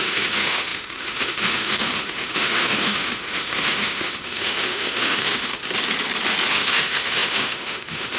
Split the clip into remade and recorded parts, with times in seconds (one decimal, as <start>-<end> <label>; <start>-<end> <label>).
0.0-5.6 remade; 5.6-6.5 recorded; 6.5-8.2 remade